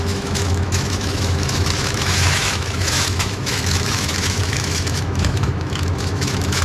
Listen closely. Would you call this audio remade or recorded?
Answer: remade